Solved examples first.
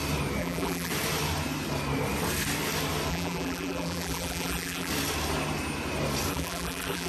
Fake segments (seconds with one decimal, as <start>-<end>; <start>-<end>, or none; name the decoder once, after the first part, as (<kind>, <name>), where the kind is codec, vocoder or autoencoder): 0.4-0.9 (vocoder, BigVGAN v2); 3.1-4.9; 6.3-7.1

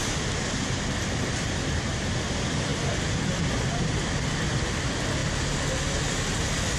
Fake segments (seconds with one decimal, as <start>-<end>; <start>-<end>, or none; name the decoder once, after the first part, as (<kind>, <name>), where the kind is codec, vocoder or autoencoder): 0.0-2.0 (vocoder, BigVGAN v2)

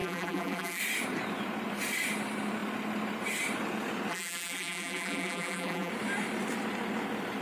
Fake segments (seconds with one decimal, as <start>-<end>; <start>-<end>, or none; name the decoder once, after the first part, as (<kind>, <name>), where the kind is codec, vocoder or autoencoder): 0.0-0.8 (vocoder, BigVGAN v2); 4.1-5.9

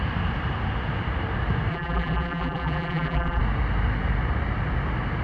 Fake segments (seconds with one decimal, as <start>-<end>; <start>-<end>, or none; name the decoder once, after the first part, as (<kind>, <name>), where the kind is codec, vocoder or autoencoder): 1.7-3.4 (vocoder, BigVGAN v2)

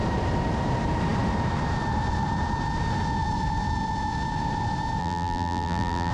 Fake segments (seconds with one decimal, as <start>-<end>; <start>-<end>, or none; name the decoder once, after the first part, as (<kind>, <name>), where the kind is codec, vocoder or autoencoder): 5.0-6.1 (vocoder, BigVGAN v2)